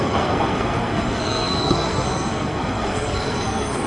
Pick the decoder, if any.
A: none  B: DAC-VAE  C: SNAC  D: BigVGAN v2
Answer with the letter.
C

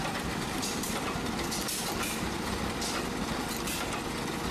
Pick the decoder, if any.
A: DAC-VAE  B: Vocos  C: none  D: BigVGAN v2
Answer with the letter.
C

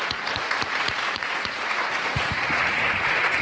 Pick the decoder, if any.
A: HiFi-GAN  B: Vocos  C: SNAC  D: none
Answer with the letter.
B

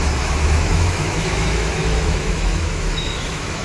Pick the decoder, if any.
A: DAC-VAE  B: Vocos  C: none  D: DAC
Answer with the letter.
A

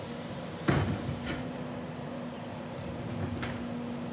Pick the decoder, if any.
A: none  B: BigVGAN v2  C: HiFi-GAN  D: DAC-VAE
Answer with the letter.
A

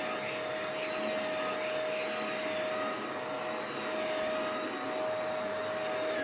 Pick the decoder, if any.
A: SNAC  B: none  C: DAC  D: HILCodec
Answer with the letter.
B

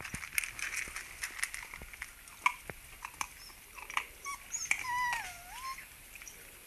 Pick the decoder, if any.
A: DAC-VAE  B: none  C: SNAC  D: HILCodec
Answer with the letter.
B